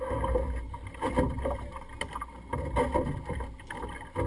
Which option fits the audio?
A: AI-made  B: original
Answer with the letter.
B